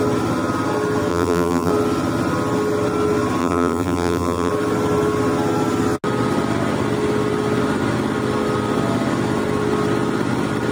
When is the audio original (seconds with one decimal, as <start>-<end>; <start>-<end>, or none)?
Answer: 0.0-1.1; 1.7-3.4; 4.5-10.7